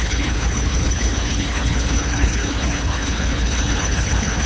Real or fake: fake